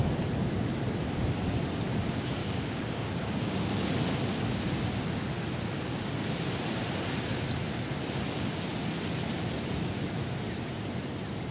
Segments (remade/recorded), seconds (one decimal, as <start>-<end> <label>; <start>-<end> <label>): 0.0-2.4 recorded; 2.4-3.7 remade; 3.7-11.5 recorded